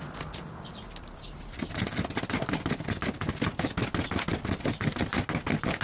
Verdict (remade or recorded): recorded